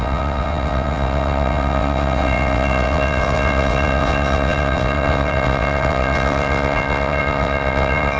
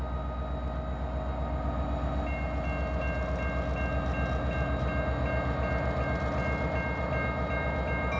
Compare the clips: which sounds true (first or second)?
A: second